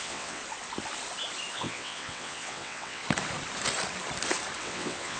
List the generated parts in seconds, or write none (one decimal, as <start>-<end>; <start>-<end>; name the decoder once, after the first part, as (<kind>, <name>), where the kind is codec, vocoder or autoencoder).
0.0-0.4 (vocoder, WaveNeXt); 1.5-3.0; 4.6-5.2